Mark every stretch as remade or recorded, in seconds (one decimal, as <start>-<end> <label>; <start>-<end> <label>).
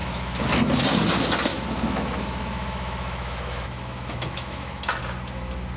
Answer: 0.0-0.6 remade; 0.6-1.5 recorded; 1.5-5.0 remade; 5.0-5.8 recorded